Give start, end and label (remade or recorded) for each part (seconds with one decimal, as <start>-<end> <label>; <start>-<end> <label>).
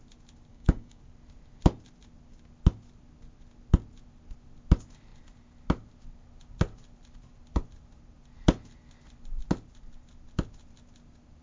0.0-0.5 recorded; 0.5-1.0 remade; 1.0-11.4 recorded